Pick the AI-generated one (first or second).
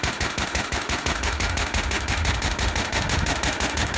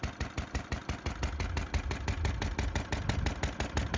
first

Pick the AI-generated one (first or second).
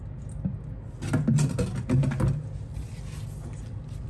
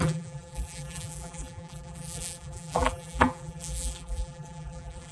second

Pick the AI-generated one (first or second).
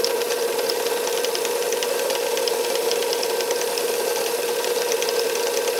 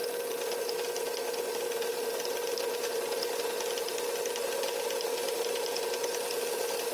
first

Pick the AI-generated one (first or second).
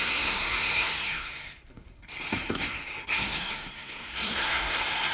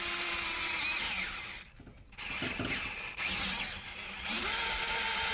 first